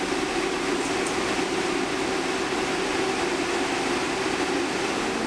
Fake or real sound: real